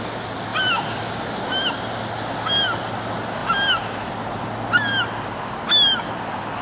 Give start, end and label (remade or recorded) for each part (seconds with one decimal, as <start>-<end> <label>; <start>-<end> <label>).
0.0-3.4 recorded; 3.4-4.1 remade; 4.1-6.6 recorded